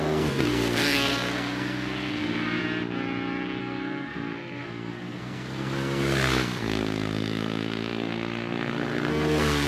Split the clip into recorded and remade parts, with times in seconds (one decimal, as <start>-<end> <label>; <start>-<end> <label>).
0.0-2.6 remade; 2.6-3.6 recorded; 3.6-9.7 remade